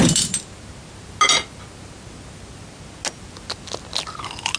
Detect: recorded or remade recorded